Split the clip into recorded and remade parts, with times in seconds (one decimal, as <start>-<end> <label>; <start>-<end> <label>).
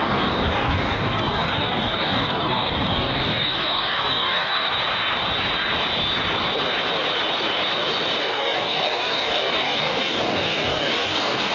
0.0-4.7 remade; 4.7-8.2 recorded; 8.2-11.5 remade